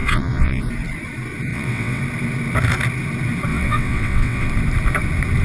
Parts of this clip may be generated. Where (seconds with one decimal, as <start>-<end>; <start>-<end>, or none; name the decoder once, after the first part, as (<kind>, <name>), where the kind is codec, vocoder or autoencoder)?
0.0-0.6 (vocoder, WaveNeXt); 1.5-2.0; 3.5-4.5